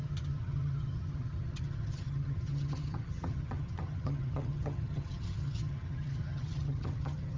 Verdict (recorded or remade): remade